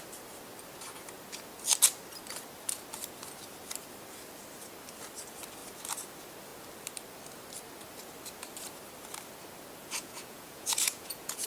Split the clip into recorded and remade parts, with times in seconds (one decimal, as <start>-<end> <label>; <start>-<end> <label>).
0.0-9.8 recorded; 9.8-11.5 remade